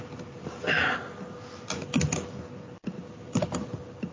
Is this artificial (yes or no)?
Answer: no